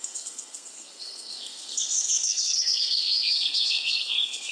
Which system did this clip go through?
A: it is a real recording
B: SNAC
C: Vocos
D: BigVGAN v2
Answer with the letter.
B